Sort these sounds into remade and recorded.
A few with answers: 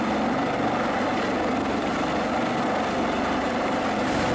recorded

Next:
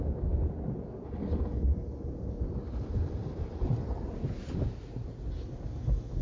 recorded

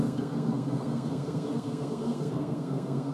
remade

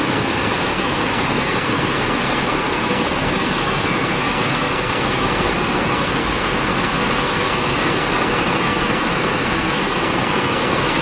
remade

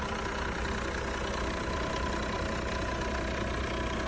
recorded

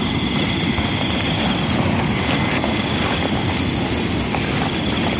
recorded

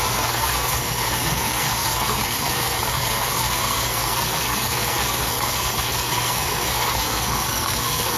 remade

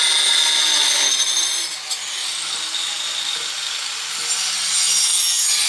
recorded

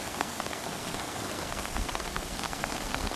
remade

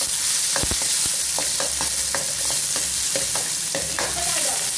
recorded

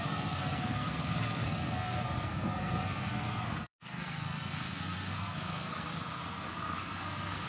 remade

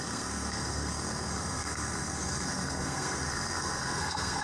remade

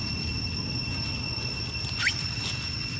recorded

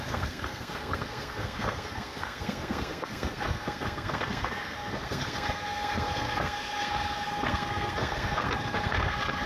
remade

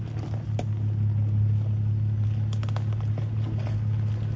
recorded